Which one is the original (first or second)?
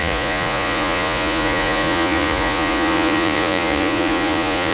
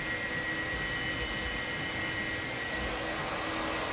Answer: second